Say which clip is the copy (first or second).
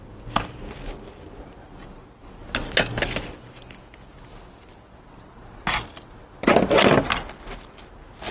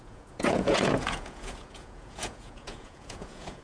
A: second